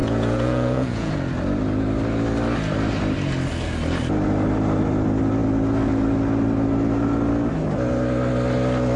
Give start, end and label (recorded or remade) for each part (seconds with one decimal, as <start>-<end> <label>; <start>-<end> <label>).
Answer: 0.0-1.1 remade; 1.1-9.0 recorded